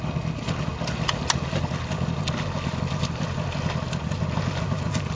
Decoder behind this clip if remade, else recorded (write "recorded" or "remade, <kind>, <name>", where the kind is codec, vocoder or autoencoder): recorded